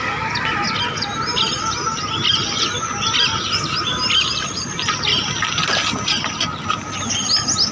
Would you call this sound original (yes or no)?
yes